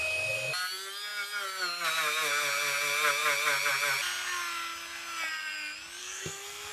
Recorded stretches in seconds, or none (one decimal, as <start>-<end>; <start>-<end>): 0.0-6.0